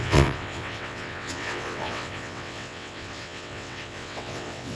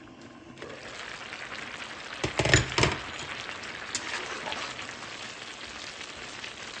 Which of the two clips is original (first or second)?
second